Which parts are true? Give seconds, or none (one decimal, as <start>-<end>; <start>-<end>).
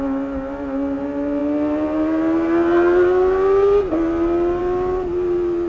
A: 0.0-5.7